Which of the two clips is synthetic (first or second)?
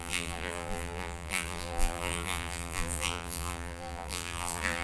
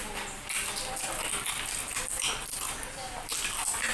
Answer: first